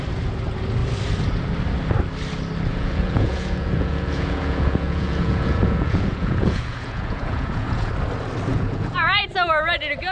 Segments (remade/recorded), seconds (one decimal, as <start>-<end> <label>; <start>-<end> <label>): 0.0-2.7 recorded; 2.7-7.9 remade; 7.9-8.5 recorded; 8.5-9.2 remade; 9.2-10.1 recorded